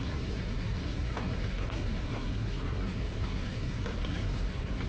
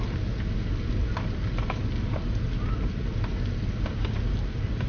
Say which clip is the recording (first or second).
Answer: second